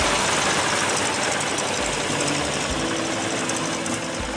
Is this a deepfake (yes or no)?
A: no